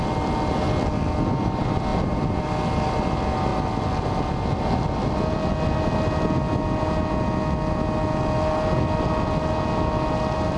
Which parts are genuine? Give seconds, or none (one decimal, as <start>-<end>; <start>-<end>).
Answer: 0.0-1.9; 2.4-10.6